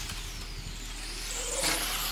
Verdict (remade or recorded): recorded